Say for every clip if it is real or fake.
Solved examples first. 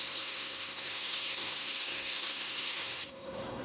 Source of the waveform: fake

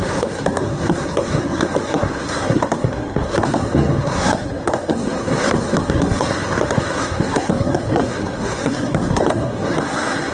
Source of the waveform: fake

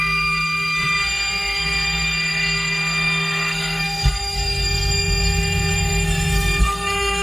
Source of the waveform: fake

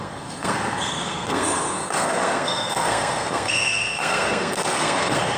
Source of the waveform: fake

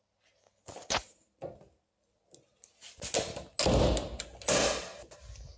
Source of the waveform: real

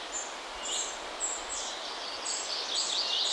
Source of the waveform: real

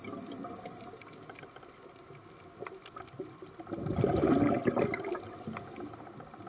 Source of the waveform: real